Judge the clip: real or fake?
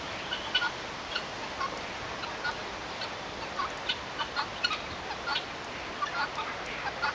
real